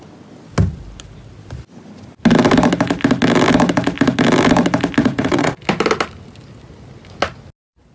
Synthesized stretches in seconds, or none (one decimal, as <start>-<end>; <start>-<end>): 5.0-5.5